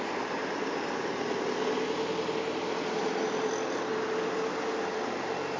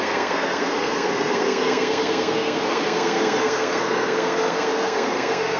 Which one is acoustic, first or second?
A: first